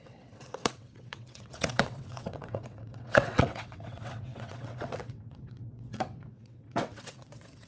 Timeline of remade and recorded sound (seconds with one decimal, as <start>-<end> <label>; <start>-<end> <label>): 0.0-7.7 remade